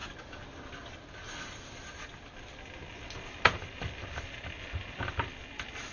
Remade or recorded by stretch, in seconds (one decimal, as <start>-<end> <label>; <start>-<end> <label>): 0.0-5.9 recorded